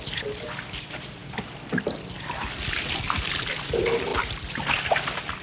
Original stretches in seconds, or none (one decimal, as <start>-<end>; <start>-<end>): none